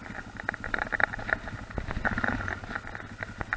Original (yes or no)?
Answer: yes